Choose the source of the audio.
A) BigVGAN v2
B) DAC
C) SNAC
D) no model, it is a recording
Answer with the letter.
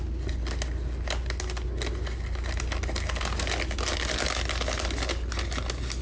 D